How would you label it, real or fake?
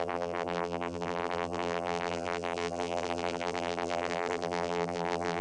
fake